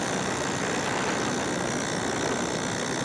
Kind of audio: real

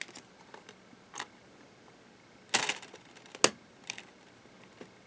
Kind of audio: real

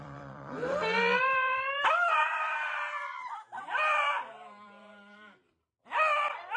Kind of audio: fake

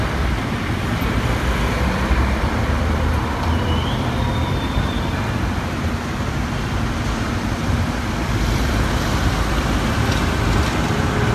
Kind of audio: fake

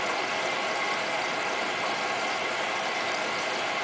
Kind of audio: real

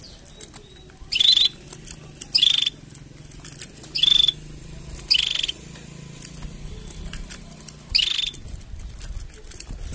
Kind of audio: real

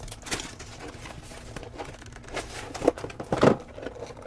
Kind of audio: real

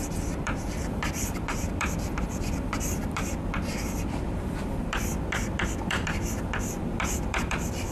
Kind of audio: fake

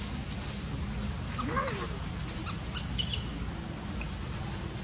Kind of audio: real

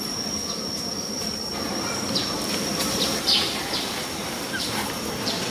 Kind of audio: fake